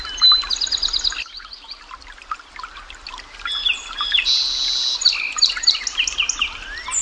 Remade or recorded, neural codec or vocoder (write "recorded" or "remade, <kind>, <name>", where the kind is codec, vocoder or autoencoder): recorded